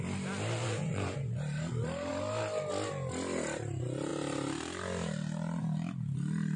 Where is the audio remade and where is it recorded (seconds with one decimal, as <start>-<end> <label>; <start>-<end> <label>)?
0.0-0.6 recorded; 0.6-1.4 remade; 1.4-6.6 recorded